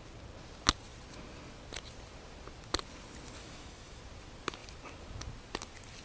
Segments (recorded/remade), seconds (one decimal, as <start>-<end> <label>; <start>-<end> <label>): 0.0-3.4 recorded; 3.4-4.0 remade; 4.0-6.0 recorded